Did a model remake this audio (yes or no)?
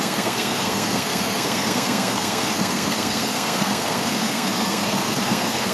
yes